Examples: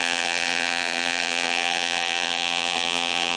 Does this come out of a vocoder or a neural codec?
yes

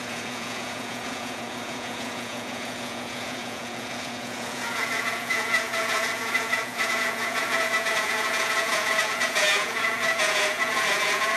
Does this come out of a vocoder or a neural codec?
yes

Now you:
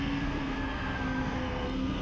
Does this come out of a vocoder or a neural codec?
yes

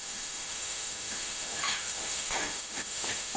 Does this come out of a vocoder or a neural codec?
yes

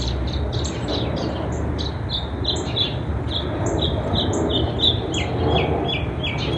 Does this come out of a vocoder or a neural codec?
no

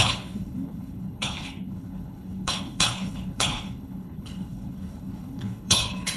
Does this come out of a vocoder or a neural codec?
yes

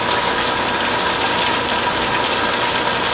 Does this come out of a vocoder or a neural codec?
no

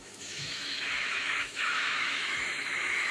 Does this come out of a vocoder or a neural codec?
yes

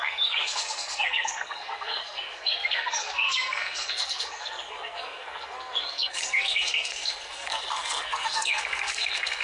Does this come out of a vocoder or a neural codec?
yes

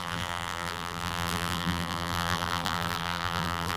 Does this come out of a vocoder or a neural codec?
yes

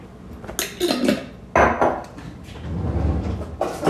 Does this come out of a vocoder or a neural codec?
no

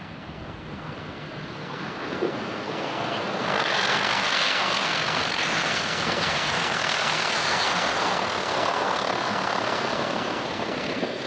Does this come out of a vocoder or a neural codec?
yes